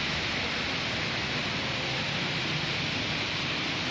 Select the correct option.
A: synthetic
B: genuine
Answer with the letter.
B